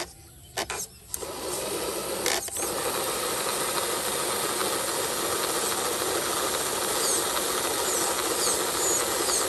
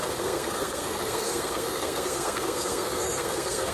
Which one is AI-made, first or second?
second